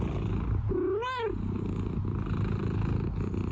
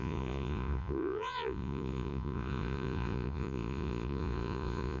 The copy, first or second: second